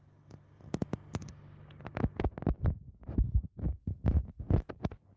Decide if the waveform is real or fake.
real